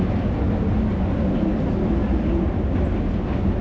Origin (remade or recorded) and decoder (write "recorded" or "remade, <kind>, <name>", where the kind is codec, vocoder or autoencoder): recorded